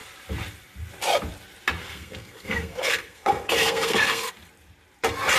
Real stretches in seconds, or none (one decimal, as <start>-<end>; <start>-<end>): 0.0-1.8; 4.3-5.4